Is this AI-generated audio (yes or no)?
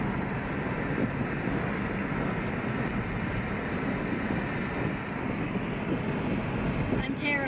no